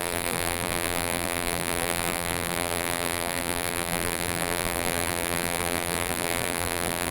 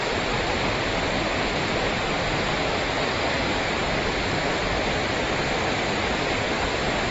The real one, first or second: second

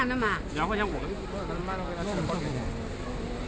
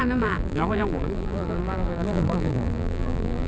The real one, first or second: first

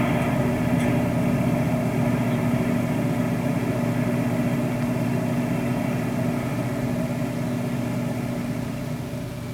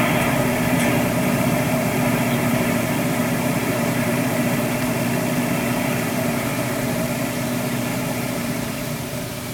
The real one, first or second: first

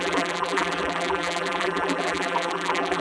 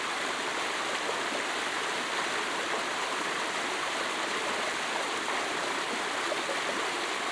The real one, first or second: second